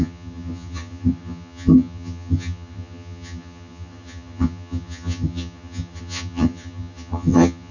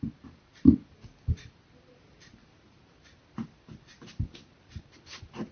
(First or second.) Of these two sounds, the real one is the second